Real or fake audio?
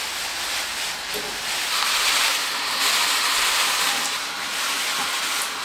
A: real